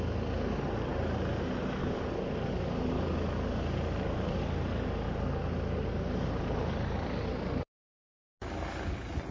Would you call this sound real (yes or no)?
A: yes